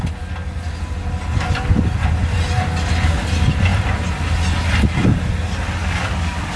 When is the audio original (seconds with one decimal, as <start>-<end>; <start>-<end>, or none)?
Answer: 0.0-5.8